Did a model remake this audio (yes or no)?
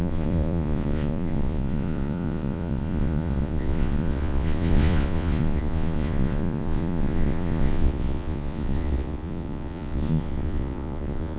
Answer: yes